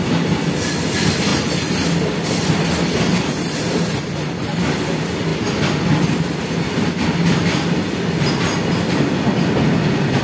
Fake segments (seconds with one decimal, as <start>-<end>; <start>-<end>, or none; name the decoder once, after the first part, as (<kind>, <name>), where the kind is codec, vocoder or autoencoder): none